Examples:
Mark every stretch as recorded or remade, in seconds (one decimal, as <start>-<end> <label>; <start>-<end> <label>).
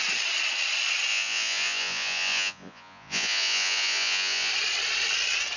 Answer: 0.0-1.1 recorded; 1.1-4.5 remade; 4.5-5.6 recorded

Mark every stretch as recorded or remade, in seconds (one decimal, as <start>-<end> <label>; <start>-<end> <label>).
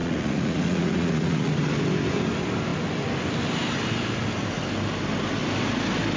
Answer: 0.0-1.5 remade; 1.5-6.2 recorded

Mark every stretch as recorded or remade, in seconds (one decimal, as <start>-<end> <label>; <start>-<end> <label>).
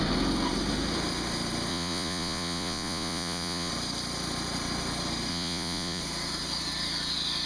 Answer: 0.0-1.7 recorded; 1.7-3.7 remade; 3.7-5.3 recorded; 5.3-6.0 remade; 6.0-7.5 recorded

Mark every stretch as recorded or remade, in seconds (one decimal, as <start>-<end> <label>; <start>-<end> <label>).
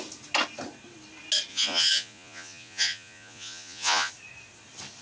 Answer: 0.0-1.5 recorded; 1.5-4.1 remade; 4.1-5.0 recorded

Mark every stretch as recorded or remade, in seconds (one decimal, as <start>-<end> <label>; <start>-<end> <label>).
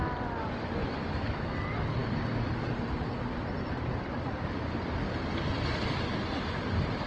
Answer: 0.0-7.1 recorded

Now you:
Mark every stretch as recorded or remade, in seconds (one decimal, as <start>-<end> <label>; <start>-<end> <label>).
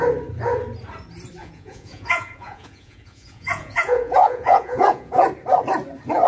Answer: 0.0-1.4 recorded; 1.4-5.2 remade; 5.2-6.3 recorded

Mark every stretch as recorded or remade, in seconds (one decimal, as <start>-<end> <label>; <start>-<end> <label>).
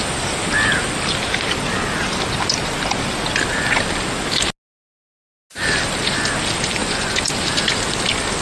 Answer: 0.0-6.8 recorded; 6.8-7.3 remade; 7.3-8.4 recorded